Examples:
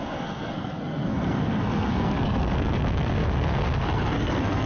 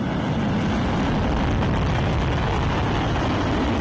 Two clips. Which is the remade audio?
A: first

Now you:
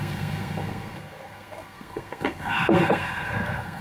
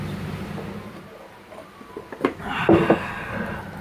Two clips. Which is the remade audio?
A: first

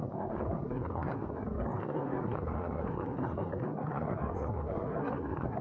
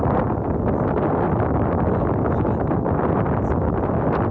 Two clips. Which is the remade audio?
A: first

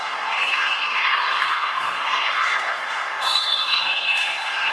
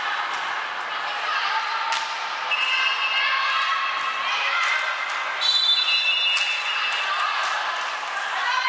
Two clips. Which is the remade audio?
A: first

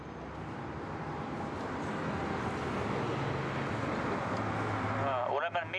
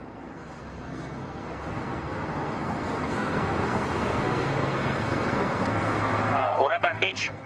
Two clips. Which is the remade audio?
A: second